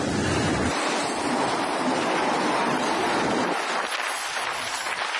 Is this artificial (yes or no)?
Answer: yes